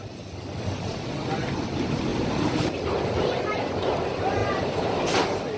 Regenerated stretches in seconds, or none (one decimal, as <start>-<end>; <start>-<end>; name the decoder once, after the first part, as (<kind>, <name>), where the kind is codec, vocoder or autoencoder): 2.1-3.0 (vocoder, BigVGAN v2); 4.4-5.1

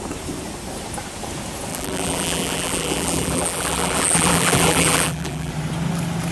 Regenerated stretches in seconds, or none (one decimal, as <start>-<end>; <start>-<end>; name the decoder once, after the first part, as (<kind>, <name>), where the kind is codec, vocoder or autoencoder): 1.7-5.5 (vocoder, BigVGAN v2)

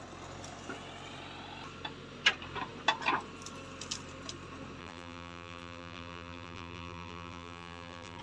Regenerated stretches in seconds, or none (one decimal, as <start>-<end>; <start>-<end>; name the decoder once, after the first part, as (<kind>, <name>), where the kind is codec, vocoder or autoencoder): 4.8-8.2 (vocoder, BigVGAN v2)

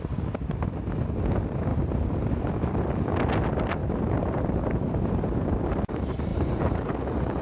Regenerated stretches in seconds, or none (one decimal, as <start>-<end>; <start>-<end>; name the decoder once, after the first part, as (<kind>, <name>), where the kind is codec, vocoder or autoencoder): 1.7-2.4 (vocoder, BigVGAN v2); 3.8-5.1; 6.3-7.4

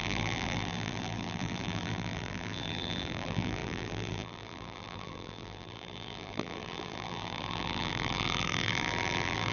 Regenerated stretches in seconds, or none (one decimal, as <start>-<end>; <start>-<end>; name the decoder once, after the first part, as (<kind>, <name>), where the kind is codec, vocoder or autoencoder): 0.0-9.5 (vocoder, BigVGAN v2)

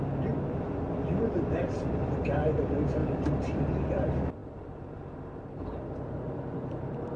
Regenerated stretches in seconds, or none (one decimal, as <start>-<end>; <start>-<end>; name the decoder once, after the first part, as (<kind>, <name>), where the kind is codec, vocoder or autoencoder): 1.6-2.6 (vocoder, BigVGAN v2); 3.0-3.7; 4.4-7.2